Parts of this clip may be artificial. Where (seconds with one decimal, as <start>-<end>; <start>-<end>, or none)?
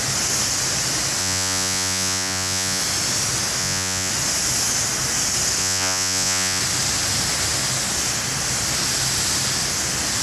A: 1.2-2.8; 3.6-4.1; 5.6-6.6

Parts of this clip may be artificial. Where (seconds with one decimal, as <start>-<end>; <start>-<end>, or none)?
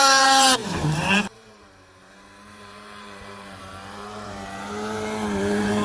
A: 0.0-5.8